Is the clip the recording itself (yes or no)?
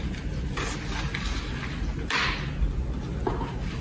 yes